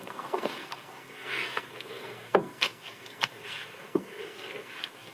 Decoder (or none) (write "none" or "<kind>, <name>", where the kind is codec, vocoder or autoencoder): codec, SNAC